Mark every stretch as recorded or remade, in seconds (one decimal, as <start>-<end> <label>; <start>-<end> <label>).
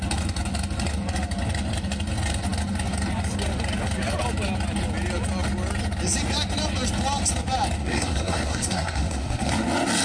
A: 0.0-7.8 recorded; 7.8-9.5 remade; 9.5-10.0 recorded